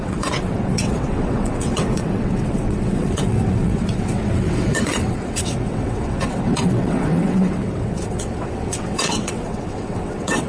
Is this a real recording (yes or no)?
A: no